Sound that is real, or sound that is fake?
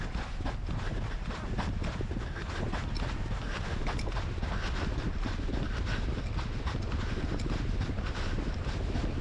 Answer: real